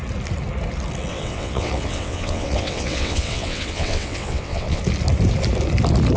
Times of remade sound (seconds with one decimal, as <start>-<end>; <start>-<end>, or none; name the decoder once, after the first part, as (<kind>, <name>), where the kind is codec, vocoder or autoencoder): 1.1-4.8 (vocoder, WaveNeXt)